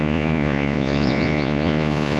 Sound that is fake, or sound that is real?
fake